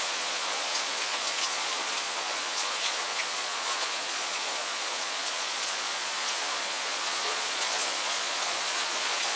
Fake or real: fake